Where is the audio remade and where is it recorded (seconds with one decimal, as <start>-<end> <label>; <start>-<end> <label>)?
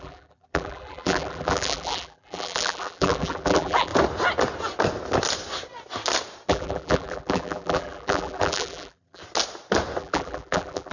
0.0-3.9 remade; 3.9-6.5 recorded; 6.5-9.2 remade; 9.2-10.0 recorded; 10.0-10.9 remade